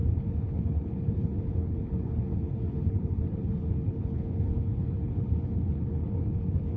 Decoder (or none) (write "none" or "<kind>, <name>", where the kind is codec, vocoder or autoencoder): codec, HILCodec